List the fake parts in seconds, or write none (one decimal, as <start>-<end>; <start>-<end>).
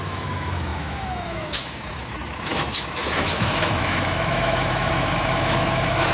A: 0.0-6.1